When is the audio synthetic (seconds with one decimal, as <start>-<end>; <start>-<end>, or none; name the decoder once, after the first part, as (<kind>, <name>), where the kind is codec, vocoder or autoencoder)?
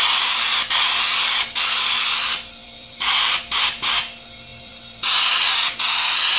2.6-3.4 (vocoder, BigVGAN v2); 4.5-5.5